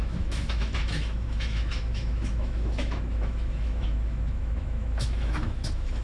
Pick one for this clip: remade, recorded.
remade